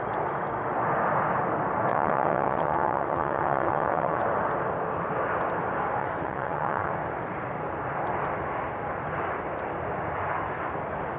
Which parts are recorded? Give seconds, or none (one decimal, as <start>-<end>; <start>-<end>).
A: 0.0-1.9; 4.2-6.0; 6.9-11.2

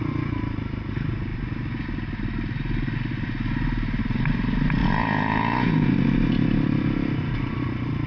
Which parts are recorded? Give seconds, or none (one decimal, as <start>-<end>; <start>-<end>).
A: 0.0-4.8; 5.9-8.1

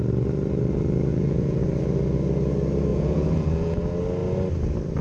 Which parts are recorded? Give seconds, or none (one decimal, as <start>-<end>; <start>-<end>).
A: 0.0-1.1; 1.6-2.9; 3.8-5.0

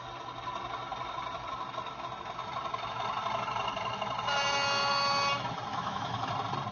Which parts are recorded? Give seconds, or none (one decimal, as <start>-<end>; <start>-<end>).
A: 0.0-5.7; 6.3-6.7

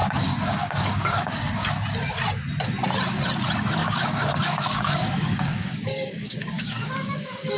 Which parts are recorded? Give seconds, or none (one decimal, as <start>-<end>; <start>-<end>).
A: 1.7-3.8

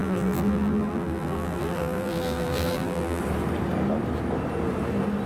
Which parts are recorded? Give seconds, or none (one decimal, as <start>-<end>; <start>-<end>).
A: 3.2-5.3

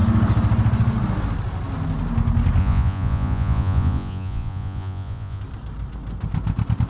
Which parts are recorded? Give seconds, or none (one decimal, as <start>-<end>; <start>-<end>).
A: 0.0-2.6; 5.4-6.9